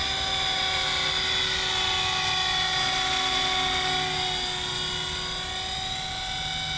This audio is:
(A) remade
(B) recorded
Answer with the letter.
B